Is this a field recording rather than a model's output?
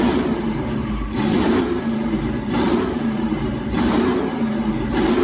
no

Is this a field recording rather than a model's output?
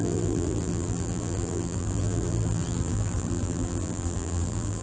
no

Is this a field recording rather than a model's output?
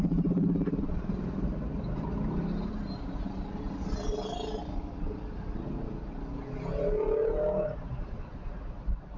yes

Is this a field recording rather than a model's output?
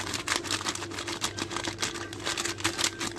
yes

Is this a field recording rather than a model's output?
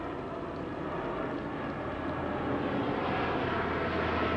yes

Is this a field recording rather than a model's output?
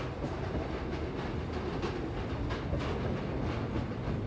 yes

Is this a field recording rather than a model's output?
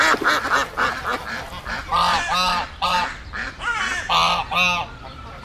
yes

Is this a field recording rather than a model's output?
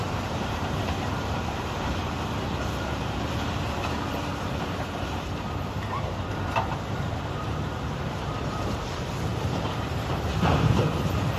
no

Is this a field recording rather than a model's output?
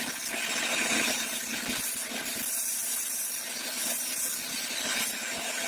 yes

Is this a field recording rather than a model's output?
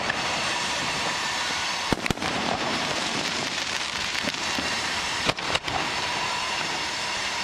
no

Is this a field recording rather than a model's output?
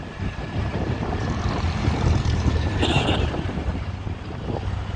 no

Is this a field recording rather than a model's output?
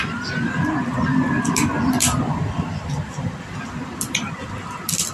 yes